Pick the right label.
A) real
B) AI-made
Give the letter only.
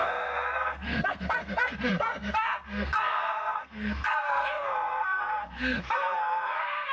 B